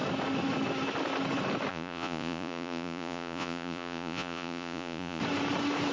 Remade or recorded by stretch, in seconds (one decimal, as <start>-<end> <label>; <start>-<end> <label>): 0.0-1.7 recorded; 1.7-5.2 remade; 5.2-5.9 recorded